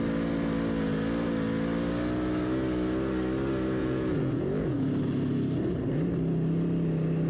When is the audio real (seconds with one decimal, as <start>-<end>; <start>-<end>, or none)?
0.0-3.8; 4.9-7.3